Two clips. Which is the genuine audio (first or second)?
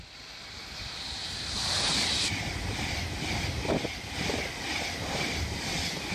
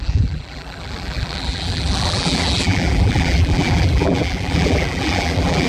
first